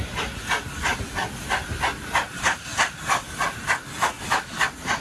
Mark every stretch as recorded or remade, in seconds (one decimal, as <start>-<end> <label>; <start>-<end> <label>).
0.0-4.0 recorded; 4.0-4.6 remade; 4.6-5.0 recorded